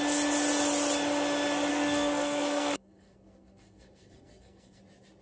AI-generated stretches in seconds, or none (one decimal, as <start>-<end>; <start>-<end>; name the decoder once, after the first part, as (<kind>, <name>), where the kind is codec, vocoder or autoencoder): 1.7-4.8 (codec, SNAC)